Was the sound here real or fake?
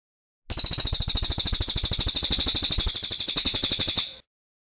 real